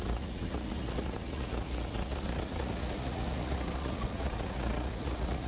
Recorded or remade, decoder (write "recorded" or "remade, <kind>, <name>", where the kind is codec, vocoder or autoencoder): remade, vocoder, Vocos